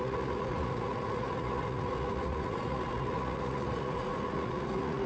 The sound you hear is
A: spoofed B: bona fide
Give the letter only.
A